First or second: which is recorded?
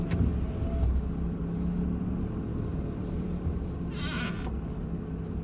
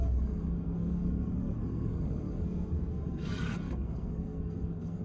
first